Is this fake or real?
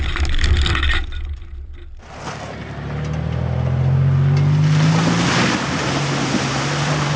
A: real